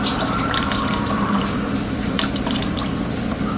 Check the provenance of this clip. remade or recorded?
remade